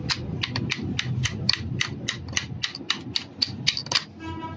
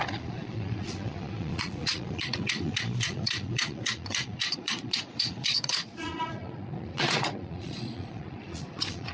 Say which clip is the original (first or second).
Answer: first